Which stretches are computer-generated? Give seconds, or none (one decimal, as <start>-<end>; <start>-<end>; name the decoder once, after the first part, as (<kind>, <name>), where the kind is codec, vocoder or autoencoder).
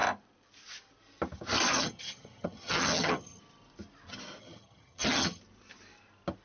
1.7-3.4 (vocoder, HiFi-GAN); 4.4-5.4